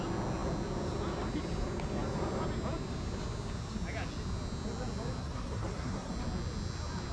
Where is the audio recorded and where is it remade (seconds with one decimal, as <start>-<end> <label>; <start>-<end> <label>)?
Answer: 0.0-5.2 recorded; 5.2-6.1 remade; 6.1-7.1 recorded